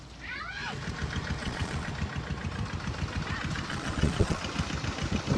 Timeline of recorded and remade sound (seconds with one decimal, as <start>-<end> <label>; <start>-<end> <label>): 0.0-1.4 recorded; 1.4-1.9 remade; 1.9-3.7 recorded; 3.7-4.4 remade; 4.4-5.4 recorded